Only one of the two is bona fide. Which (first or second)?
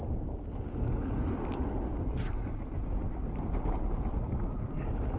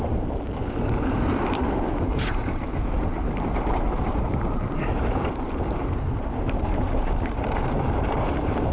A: first